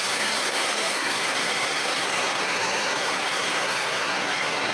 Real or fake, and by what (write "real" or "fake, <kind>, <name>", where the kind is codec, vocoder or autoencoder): fake, codec, SNAC